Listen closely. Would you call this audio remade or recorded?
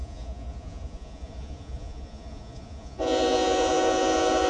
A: remade